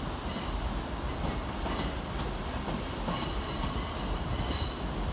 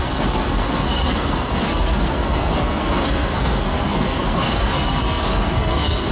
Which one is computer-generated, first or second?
second